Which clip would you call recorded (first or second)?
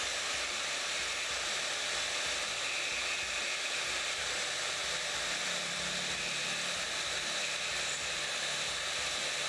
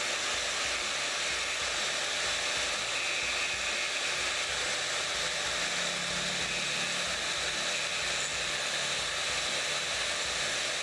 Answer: second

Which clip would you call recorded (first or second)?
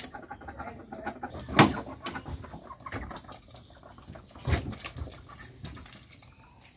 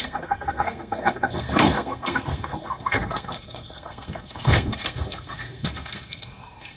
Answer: first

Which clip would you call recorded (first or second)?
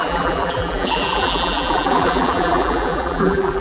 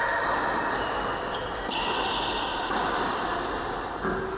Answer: second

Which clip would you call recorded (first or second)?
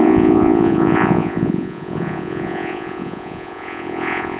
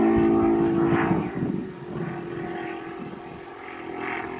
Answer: second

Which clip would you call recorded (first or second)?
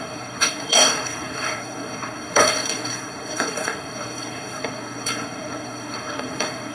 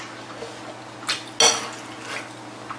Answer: second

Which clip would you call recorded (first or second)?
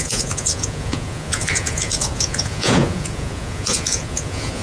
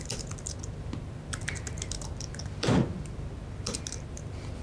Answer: second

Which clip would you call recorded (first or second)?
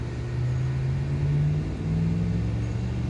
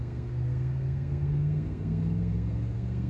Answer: first